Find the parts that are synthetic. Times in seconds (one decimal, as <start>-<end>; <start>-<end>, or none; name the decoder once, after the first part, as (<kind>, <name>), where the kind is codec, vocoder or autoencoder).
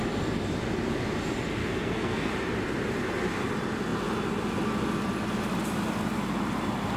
1.6-2.3 (codec, SNAC)